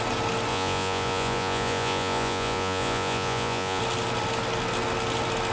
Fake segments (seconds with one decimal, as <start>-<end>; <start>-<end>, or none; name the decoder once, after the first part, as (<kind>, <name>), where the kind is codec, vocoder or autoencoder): 0.5-3.8 (vocoder, Vocos)